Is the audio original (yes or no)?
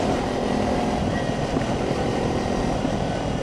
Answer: no